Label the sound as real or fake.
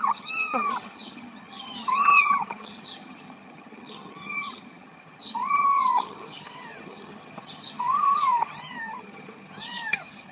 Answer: fake